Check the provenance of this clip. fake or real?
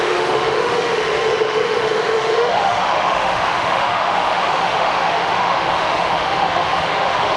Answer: fake